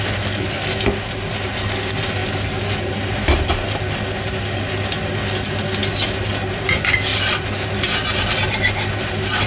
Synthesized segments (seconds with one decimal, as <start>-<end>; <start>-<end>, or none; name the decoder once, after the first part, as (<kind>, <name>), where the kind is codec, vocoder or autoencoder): none

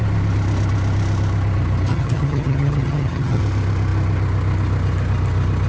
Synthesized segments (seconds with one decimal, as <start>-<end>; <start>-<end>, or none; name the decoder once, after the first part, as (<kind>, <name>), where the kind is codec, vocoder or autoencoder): 1.9-3.4 (vocoder, HiFi-GAN)